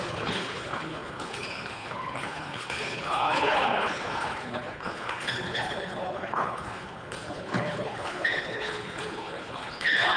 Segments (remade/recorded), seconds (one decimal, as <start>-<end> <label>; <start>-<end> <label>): 0.0-10.2 remade